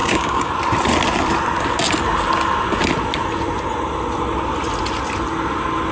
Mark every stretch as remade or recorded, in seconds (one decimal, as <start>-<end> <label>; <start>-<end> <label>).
0.0-0.5 remade; 0.5-5.9 recorded